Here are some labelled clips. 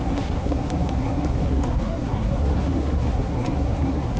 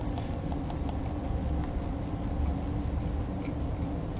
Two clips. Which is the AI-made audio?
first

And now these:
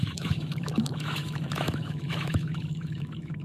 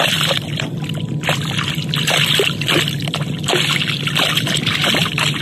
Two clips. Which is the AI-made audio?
first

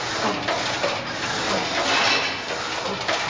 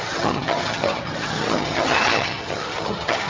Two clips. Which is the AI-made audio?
second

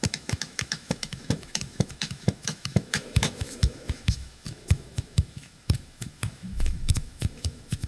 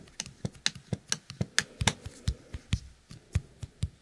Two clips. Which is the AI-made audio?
first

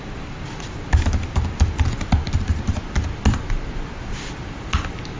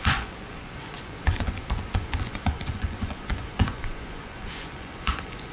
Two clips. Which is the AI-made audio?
second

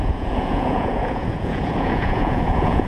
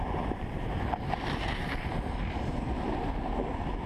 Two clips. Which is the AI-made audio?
first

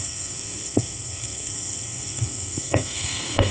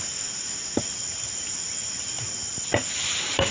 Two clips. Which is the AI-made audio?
first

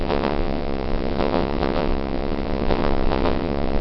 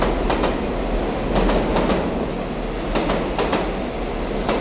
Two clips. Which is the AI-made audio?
first